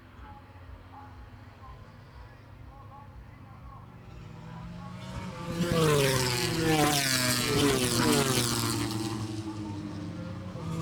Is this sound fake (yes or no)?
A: no